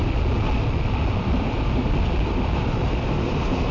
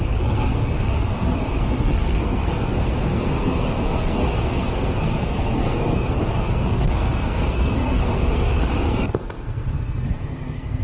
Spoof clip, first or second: second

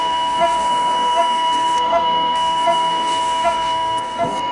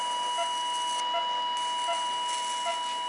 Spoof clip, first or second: first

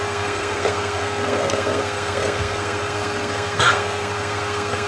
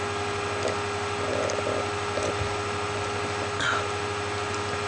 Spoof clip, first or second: first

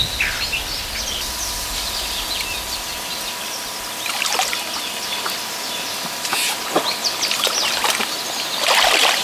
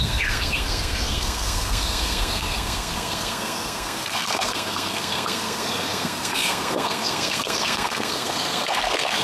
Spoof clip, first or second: second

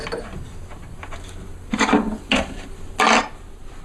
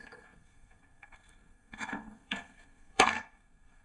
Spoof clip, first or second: second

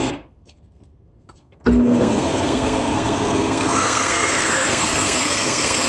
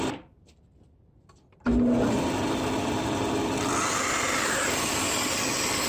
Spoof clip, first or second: first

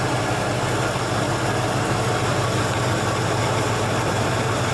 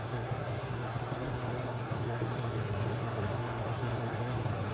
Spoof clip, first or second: second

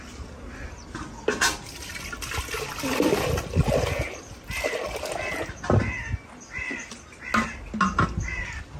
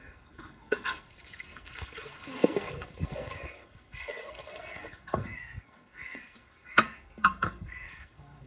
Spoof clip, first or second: second